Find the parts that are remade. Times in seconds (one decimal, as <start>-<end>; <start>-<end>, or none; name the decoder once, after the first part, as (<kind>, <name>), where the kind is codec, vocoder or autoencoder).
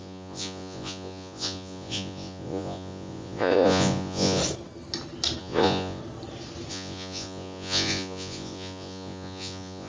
0.0-4.4 (vocoder, Vocos); 5.4-6.0; 6.7-9.9